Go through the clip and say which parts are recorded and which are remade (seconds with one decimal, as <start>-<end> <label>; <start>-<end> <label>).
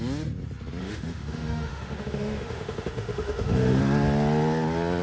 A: 0.0-0.8 recorded; 0.8-3.8 remade; 3.8-5.0 recorded